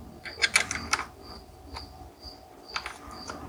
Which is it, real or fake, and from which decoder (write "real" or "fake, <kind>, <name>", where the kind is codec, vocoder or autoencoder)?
real